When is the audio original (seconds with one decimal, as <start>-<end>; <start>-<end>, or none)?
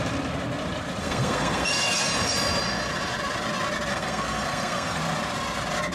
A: 0.0-1.0; 2.1-3.9; 5.0-5.9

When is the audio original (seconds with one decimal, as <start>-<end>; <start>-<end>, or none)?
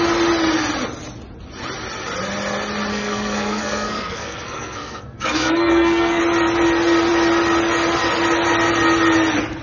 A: 0.0-2.9; 6.2-9.6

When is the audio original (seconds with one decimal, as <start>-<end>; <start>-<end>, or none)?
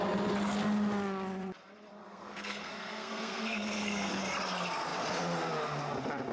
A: 0.0-2.0; 4.1-6.3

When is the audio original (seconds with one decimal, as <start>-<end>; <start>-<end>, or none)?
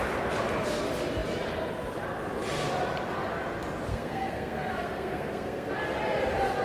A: 0.0-3.9; 5.7-6.6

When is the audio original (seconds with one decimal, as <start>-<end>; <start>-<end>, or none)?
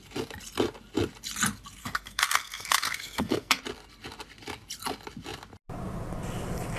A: 0.0-1.8; 3.6-6.8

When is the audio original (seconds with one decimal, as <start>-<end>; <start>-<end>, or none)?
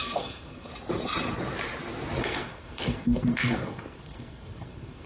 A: 0.7-2.2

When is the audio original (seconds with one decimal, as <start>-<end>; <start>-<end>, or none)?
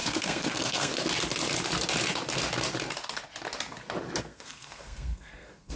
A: 0.9-4.2